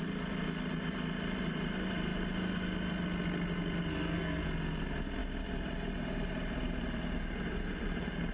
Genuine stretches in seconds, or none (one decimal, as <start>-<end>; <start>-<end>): 0.0-3.9; 4.4-8.3